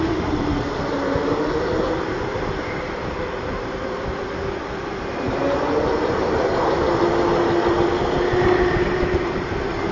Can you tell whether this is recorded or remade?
recorded